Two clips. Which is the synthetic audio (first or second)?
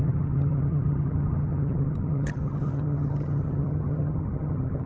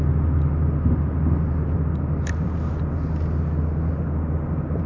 first